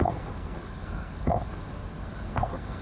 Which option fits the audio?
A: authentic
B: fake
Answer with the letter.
B